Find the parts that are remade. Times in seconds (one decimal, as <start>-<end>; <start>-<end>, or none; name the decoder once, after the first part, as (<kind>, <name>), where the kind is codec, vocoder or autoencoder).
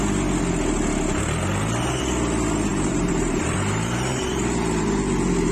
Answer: 2.7-4.4 (vocoder, BigVGAN v2)